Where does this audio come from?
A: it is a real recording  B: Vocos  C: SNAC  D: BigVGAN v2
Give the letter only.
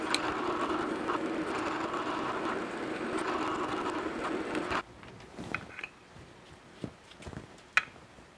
A